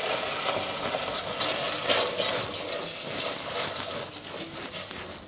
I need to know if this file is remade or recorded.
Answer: recorded